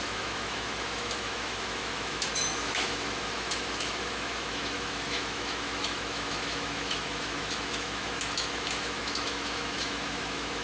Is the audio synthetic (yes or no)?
yes